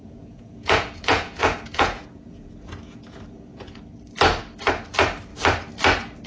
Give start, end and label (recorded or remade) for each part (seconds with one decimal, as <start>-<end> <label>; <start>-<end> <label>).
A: 0.0-3.8 remade; 3.8-6.3 recorded